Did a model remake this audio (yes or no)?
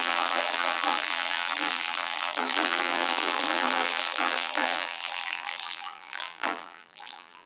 yes